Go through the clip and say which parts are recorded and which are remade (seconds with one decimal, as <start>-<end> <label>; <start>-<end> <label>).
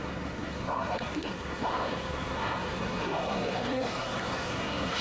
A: 0.0-5.0 remade